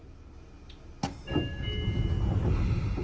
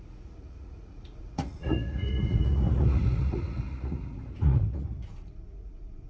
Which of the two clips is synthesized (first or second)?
second